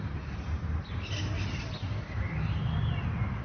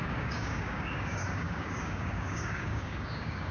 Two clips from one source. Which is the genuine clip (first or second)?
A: first